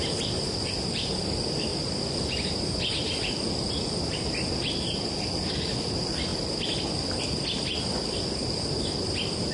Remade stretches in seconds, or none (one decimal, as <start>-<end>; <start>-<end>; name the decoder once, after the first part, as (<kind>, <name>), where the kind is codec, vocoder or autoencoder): none

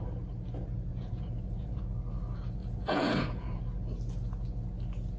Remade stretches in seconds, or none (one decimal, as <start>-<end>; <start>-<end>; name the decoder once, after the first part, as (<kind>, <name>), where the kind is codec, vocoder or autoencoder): 0.9-1.8 (vocoder, Vocos); 2.6-3.6

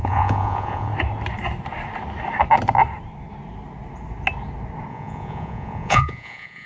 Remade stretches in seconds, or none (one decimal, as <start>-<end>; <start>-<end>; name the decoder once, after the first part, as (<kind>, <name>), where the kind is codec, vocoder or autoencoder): 0.0-0.9 (vocoder, Vocos); 4.9-6.7